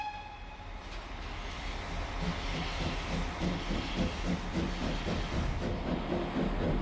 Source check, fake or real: real